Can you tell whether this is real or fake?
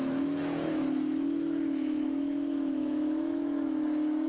fake